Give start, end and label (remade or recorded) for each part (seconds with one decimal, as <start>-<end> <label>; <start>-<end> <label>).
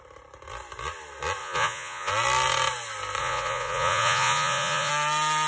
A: 0.0-1.4 recorded; 1.4-2.1 remade; 2.1-3.2 recorded; 3.2-4.9 remade; 4.9-5.5 recorded